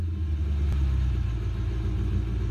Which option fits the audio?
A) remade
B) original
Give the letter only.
B